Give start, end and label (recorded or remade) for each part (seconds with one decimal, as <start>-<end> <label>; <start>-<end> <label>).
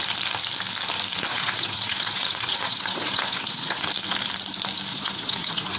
0.0-1.3 recorded; 1.3-3.9 remade; 3.9-4.9 recorded; 4.9-5.8 remade